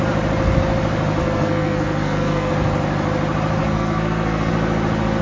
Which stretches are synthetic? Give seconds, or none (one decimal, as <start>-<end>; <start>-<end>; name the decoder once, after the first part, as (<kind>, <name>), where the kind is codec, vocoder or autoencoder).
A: 1.2-2.5 (codec, SNAC); 3.6-4.5